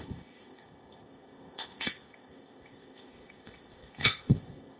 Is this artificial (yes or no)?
yes